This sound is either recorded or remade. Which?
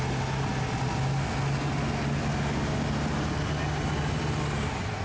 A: recorded